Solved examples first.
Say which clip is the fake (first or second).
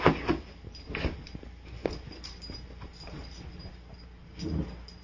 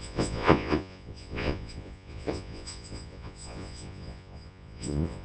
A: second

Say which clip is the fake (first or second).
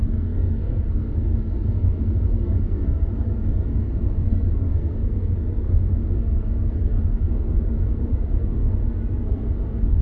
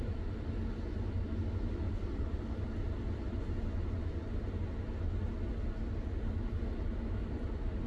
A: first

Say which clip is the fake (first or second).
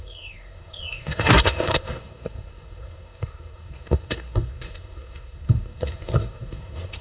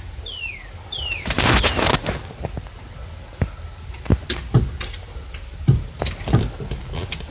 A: first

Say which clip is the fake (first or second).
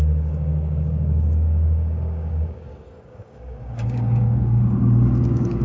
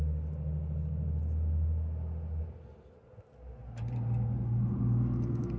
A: first